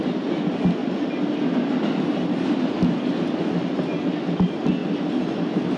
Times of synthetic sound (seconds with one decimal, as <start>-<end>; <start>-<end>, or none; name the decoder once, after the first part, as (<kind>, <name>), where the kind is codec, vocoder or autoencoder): none